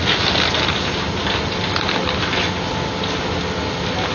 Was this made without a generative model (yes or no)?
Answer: yes